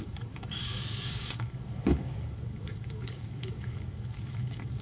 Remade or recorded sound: remade